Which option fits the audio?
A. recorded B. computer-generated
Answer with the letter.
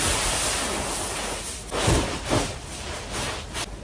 A